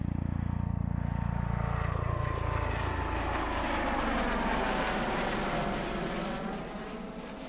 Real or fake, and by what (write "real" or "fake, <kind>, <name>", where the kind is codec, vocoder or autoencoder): real